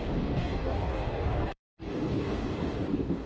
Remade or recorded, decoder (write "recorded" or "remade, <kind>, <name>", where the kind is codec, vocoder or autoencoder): remade, codec, DAC